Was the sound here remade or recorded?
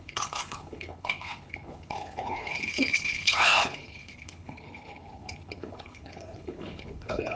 remade